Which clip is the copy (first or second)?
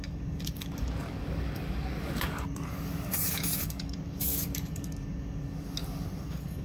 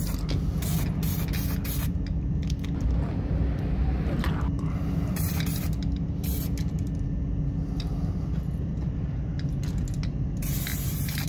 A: first